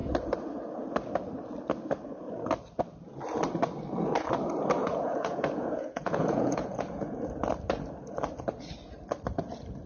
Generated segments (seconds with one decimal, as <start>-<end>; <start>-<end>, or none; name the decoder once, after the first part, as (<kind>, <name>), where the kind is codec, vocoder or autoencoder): 4.8-7.2 (vocoder, Vocos)